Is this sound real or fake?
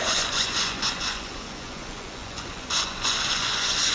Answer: fake